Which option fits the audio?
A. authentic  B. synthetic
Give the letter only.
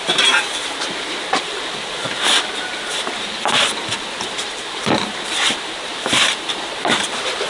B